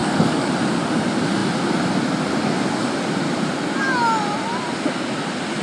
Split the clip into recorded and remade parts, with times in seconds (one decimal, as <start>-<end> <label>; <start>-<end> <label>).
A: 0.0-0.5 remade; 0.5-5.6 recorded